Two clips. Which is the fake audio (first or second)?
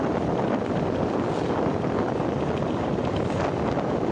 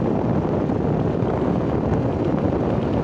first